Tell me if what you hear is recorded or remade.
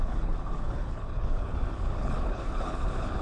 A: remade